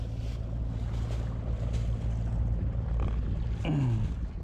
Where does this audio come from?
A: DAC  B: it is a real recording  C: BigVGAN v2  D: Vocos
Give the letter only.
B